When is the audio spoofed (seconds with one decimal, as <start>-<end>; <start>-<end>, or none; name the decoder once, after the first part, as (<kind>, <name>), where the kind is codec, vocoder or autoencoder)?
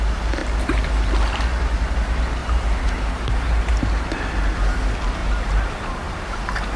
2.4-3.7 (vocoder, BigVGAN v2); 5.2-6.8